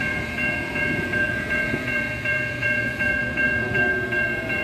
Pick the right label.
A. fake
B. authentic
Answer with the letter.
A